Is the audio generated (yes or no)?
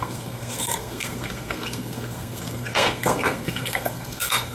yes